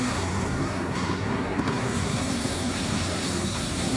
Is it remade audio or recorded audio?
remade